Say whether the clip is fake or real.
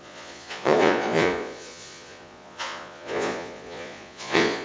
fake